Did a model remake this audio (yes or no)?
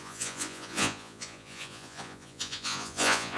yes